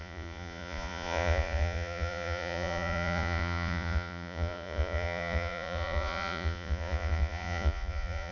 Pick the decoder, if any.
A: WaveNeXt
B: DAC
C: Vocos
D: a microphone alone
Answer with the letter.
C